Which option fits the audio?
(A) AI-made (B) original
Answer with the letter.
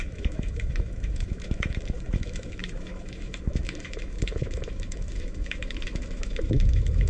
A